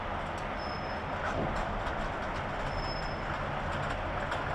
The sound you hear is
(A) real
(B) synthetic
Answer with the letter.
A